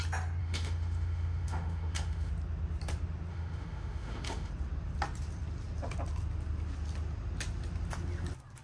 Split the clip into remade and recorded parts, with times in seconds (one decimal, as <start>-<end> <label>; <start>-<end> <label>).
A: 0.0-0.4 recorded; 0.4-2.3 remade; 2.3-3.3 recorded; 3.3-4.5 remade; 4.5-8.6 recorded